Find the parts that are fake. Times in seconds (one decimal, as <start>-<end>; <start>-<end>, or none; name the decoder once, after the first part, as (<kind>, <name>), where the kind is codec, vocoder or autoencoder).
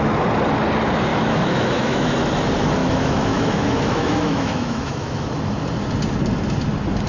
1.1-2.1 (autoencoder, DAC-VAE); 2.8-5.3